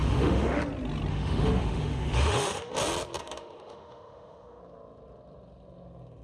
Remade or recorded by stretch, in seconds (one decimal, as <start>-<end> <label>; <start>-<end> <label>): 0.0-0.6 remade; 0.6-1.1 recorded; 1.1-2.7 remade; 2.7-3.2 recorded; 3.2-4.6 remade; 4.6-6.2 recorded

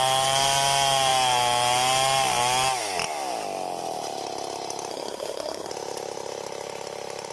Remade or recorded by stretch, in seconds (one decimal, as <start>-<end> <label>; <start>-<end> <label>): 0.0-4.9 recorded; 4.9-5.7 remade; 5.7-7.3 recorded

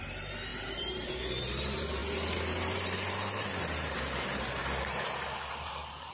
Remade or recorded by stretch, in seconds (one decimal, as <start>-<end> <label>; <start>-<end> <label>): 0.0-4.6 remade; 4.6-5.5 recorded; 5.5-6.1 remade